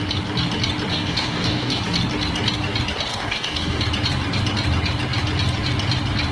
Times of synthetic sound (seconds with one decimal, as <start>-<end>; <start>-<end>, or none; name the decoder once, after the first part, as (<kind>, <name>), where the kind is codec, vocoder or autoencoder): 0.9-1.8 (codec, DAC); 3.1-3.8